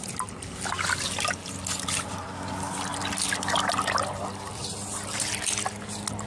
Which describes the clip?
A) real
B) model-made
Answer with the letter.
A